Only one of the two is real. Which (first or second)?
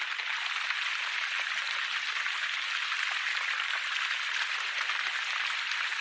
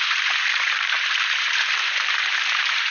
first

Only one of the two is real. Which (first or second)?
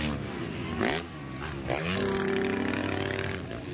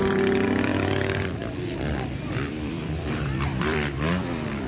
first